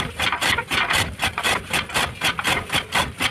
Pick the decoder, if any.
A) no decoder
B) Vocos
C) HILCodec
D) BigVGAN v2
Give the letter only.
A